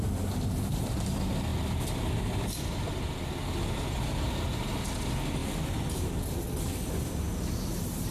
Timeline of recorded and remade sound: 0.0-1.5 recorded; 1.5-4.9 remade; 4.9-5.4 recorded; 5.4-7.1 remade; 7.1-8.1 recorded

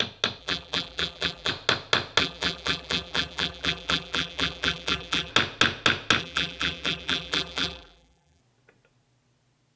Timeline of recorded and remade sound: 0.0-0.4 recorded; 0.4-1.5 remade; 1.5-2.2 recorded; 2.2-5.3 remade; 5.3-6.2 recorded; 6.2-8.4 remade; 8.4-9.8 recorded

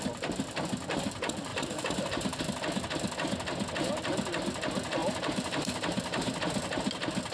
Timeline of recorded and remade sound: 0.0-1.5 recorded; 1.5-2.4 remade; 2.4-5.0 recorded; 5.0-6.4 remade; 6.4-7.3 recorded

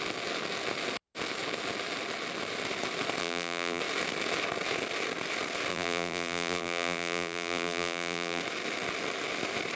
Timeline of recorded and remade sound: 0.0-3.2 recorded; 3.2-3.8 remade; 3.8-5.7 recorded; 5.7-8.4 remade; 8.4-9.8 recorded

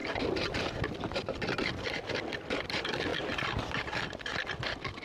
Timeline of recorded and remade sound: 0.0-1.8 recorded; 1.8-5.0 remade

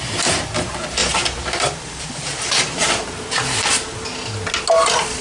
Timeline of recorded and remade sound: 0.0-1.0 recorded; 1.0-3.1 remade; 3.1-5.2 recorded